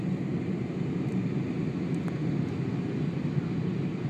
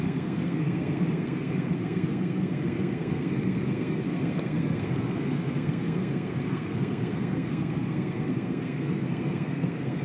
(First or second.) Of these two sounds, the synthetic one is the second